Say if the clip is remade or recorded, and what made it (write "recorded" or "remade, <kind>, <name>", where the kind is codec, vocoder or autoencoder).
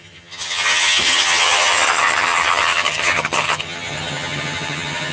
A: remade, vocoder, HiFi-GAN